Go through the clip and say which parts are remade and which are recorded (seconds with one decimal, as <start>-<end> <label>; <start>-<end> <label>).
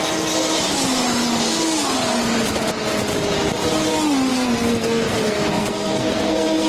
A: 0.0-4.3 recorded; 4.3-6.7 remade